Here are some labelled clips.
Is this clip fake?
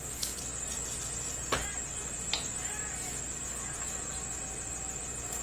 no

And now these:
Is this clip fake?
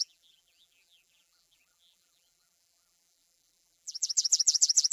yes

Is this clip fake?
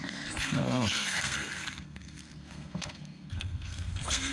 yes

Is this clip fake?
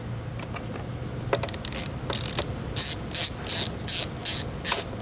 no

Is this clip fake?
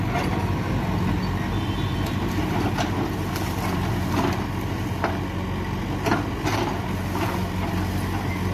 no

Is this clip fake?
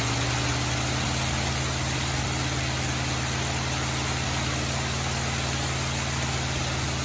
no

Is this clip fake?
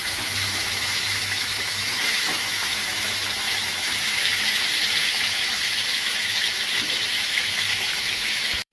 yes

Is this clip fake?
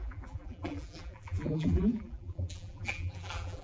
yes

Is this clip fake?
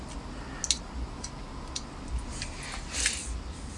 no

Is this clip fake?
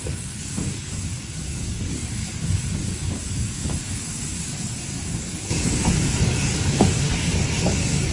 yes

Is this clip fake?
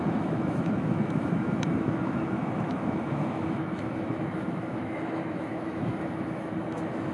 yes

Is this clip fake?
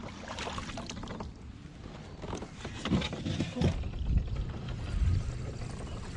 no